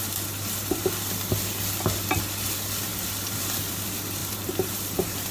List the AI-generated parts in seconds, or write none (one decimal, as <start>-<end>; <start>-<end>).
4.2-5.3